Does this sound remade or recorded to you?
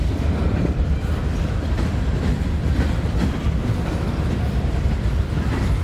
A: remade